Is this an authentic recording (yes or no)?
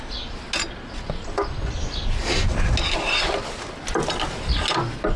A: yes